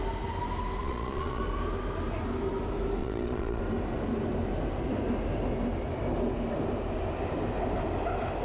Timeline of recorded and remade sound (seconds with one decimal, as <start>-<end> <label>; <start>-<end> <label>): 0.0-0.8 recorded; 0.8-1.4 remade; 1.4-3.0 recorded; 3.0-3.6 remade; 3.6-8.4 recorded